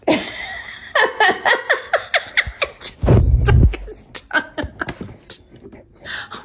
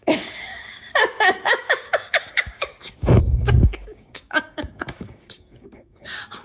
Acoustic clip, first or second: first